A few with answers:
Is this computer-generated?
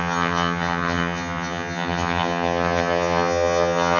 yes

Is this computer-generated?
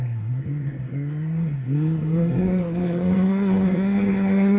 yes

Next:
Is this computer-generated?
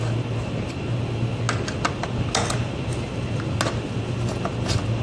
no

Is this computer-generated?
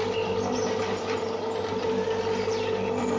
no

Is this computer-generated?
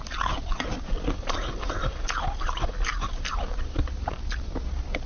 no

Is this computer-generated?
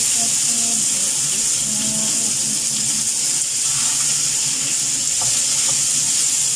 no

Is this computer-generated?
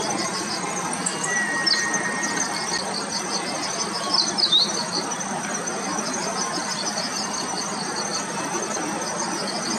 no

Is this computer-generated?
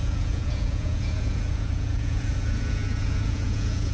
yes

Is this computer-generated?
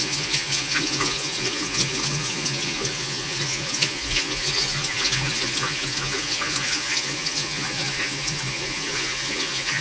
yes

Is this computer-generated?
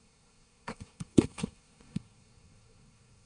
yes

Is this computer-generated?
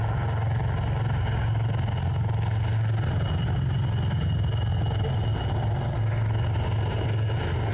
no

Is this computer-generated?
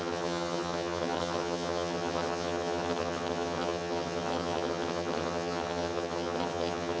yes